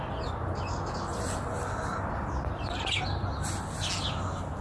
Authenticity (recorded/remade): recorded